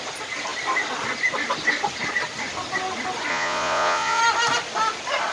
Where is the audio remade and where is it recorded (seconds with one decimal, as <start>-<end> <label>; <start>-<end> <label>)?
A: 0.0-3.3 recorded; 3.3-4.2 remade; 4.2-5.3 recorded

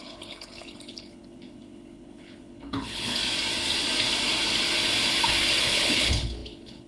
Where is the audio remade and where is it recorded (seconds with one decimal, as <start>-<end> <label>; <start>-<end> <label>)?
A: 0.0-3.2 remade; 3.2-5.6 recorded; 5.6-6.9 remade

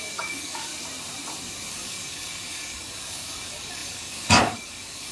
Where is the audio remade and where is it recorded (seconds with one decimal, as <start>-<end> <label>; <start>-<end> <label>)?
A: 0.0-0.7 remade; 0.7-1.7 recorded; 1.7-5.1 remade

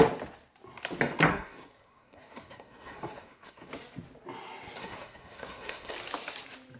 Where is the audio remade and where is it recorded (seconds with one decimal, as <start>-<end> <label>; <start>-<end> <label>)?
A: 0.0-1.3 recorded; 1.3-3.7 remade; 3.7-4.8 recorded; 4.8-5.9 remade; 5.9-6.8 recorded

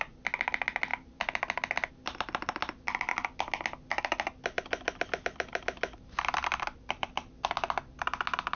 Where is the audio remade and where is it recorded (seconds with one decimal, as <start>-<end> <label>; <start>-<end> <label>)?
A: 0.0-8.6 recorded

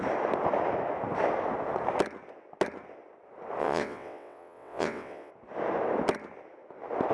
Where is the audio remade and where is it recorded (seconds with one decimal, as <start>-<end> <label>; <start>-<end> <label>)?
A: 0.0-3.6 recorded; 3.6-5.3 remade; 5.3-7.1 recorded